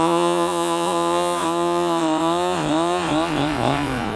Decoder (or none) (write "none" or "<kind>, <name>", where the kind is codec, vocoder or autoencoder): vocoder, Vocos